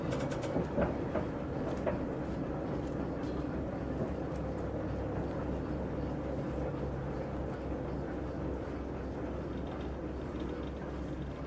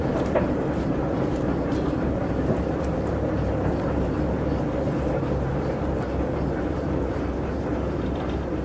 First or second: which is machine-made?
second